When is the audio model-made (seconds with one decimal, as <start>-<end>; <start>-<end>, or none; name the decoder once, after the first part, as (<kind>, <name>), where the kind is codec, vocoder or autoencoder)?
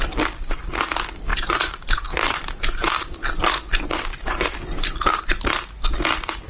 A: 1.3-5.2 (vocoder, BigVGAN v2)